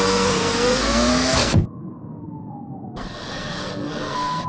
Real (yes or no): no